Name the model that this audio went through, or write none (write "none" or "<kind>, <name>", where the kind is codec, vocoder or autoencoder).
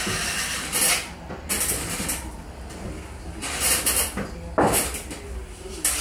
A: none